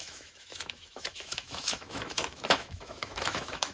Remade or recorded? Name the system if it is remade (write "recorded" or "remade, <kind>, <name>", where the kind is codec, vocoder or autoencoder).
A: remade, autoencoder, DAC-VAE